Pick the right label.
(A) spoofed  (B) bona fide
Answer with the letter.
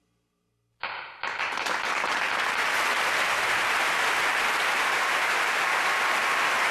B